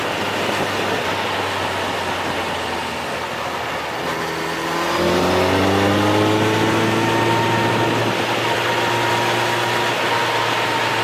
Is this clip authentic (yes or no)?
yes